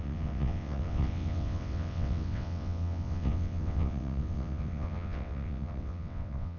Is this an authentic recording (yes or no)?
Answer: no